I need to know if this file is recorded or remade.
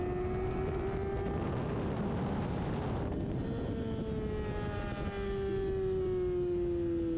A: recorded